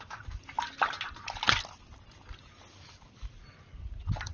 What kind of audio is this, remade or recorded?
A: recorded